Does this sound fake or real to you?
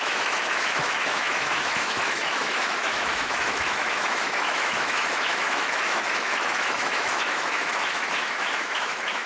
fake